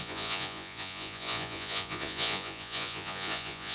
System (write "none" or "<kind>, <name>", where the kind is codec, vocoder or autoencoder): vocoder, Vocos